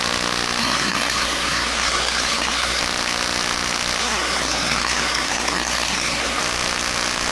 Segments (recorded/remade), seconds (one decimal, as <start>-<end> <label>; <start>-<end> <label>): 0.0-0.6 recorded; 0.6-2.8 remade; 2.8-4.0 recorded; 4.0-6.4 remade; 6.4-7.3 recorded